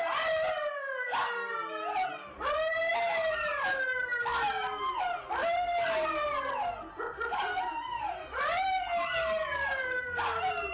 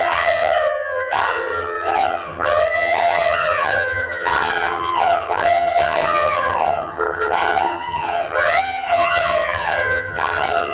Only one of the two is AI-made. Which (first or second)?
second